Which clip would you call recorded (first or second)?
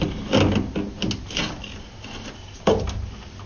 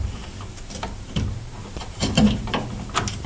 first